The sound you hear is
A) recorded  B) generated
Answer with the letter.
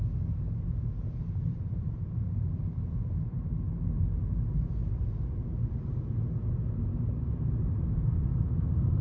B